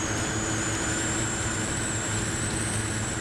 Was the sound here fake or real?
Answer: real